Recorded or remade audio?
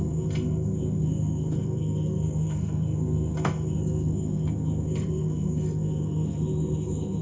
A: remade